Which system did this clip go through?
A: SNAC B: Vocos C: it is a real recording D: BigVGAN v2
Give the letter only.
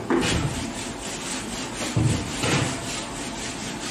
C